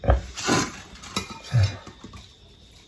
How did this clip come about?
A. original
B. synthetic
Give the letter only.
A